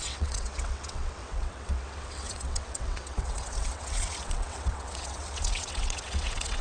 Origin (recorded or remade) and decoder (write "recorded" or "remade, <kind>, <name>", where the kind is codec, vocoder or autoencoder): remade, vocoder, WaveNeXt